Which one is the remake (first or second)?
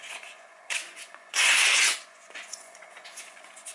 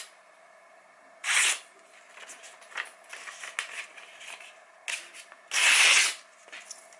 first